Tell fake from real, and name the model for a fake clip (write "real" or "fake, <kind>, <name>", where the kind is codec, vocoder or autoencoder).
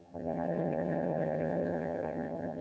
fake, vocoder, HiFi-GAN